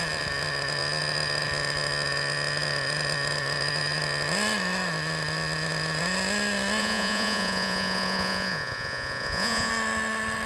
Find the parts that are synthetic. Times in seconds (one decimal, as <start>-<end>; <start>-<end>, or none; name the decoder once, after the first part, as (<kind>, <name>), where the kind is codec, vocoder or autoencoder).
6.8-9.7 (vocoder, Vocos)